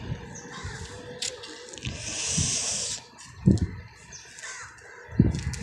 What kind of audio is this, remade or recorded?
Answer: recorded